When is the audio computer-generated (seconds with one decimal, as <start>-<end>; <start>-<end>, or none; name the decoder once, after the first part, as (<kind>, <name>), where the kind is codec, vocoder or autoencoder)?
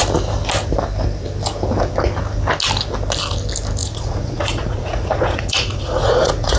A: 3.8-6.6 (vocoder, Vocos)